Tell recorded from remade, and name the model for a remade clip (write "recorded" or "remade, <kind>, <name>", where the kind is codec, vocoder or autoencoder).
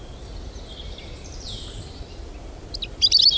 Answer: recorded